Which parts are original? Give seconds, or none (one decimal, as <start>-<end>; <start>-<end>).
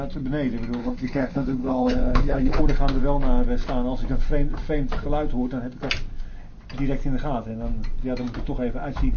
0.0-0.8; 2.6-9.2